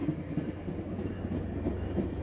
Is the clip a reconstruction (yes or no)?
no